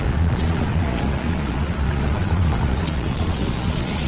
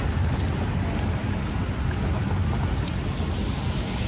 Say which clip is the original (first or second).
second